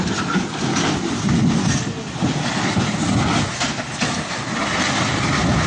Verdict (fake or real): real